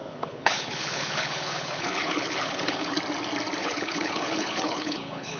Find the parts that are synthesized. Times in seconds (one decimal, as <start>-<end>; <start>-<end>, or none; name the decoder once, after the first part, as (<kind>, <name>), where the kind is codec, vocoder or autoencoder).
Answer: 0.0-2.9 (codec, HILCodec); 3.6-5.4